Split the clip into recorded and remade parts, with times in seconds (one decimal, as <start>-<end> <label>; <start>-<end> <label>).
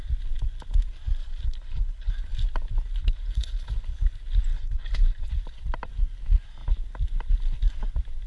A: 0.0-1.2 recorded; 1.2-2.1 remade; 2.1-3.0 recorded; 3.0-3.8 remade; 3.8-4.5 recorded; 4.5-5.3 remade; 5.3-8.3 recorded